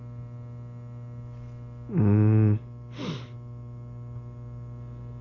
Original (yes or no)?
yes